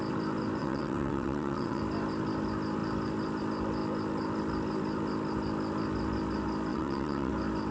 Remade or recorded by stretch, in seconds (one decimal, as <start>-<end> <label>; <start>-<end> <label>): 0.0-0.6 recorded; 0.6-1.8 remade; 1.8-6.7 recorded; 6.7-7.3 remade; 7.3-7.7 recorded